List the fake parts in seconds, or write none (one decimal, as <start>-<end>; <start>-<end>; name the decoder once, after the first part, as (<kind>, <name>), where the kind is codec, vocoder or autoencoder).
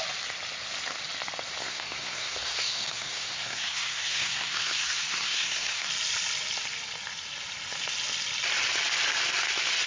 1.6-5.9 (codec, SNAC)